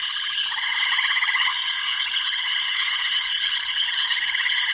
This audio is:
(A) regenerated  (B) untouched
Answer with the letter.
A